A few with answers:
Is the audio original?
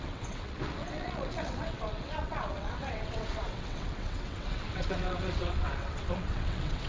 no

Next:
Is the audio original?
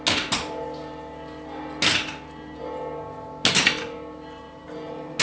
yes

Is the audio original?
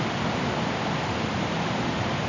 yes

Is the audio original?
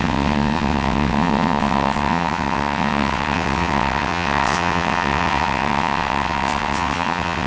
no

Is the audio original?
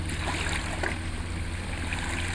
yes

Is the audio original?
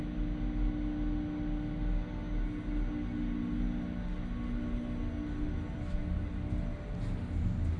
yes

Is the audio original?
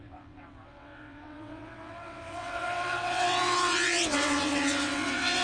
no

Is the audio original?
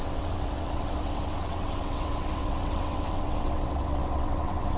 no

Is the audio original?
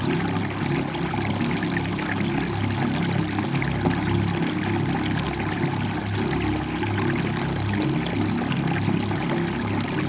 yes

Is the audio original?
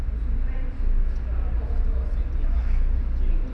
yes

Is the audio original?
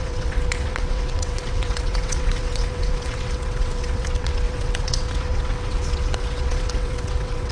no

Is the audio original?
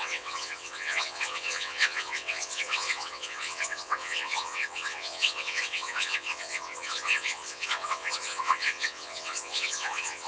no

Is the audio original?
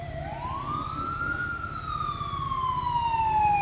yes